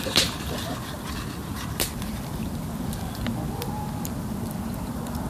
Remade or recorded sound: remade